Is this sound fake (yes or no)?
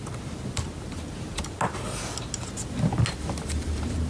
no